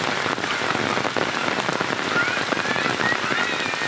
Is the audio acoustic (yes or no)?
yes